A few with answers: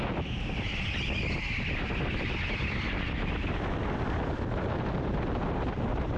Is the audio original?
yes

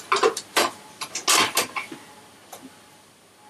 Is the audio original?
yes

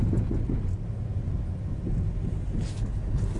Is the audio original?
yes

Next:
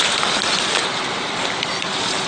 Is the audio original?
yes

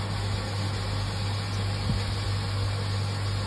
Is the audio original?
yes